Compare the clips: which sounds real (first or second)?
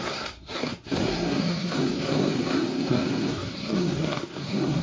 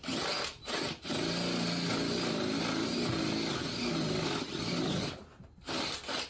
second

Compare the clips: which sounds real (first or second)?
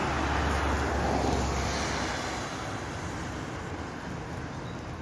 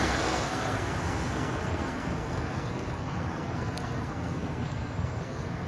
first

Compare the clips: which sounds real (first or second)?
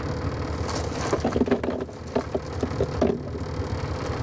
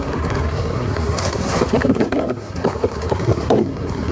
first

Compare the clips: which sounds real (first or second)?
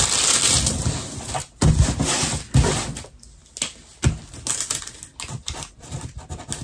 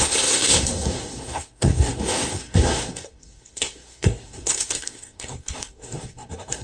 first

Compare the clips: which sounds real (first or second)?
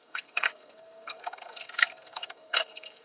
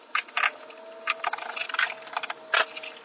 second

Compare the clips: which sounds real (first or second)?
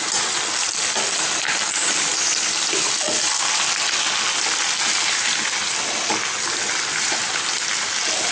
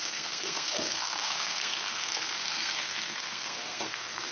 first